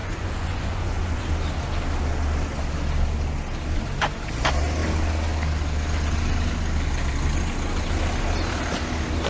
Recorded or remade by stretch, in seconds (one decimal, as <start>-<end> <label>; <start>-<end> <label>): 0.0-1.2 remade; 1.2-9.3 recorded